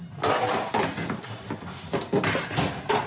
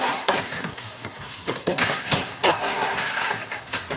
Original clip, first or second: first